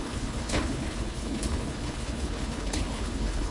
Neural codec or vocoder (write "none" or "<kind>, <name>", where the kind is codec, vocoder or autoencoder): codec, HILCodec